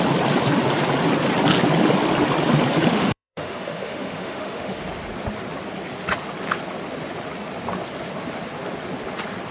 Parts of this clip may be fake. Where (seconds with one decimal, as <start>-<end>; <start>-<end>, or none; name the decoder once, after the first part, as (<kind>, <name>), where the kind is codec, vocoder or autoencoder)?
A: 2.9-4.8 (autoencoder, DAC-VAE)